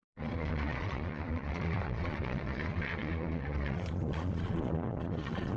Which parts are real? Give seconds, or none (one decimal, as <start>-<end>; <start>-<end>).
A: none

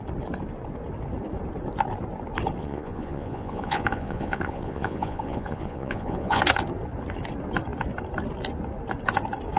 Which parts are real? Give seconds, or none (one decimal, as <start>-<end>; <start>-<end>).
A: 0.0-2.6; 6.4-9.6

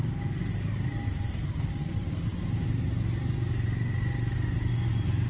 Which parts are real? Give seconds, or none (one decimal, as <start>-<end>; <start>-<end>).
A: 0.0-5.3

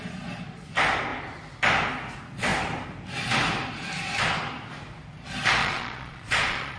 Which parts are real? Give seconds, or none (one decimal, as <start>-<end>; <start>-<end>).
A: 0.0-5.6

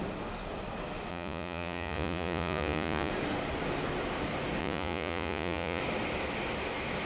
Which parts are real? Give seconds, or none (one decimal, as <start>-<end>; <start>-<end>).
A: 0.0-1.1; 3.1-4.6; 5.8-7.1

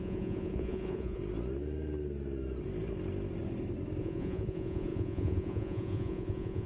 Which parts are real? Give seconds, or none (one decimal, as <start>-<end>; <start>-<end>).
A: 1.2-4.0

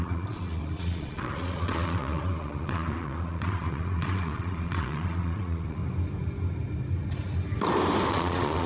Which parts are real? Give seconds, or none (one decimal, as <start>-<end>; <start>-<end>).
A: 5.8-8.1

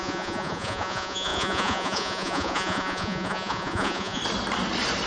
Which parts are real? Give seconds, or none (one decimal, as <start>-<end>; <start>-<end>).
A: 4.2-5.1